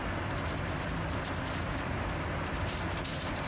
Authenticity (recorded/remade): recorded